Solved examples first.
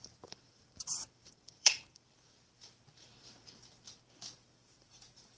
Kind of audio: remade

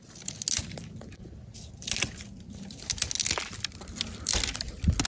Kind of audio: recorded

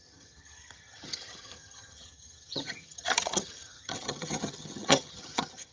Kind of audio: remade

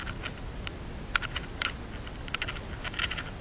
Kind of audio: recorded